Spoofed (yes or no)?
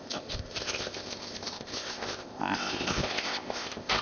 yes